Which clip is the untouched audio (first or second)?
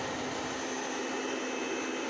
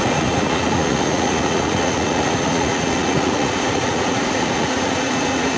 first